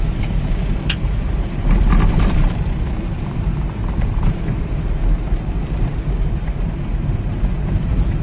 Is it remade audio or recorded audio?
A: remade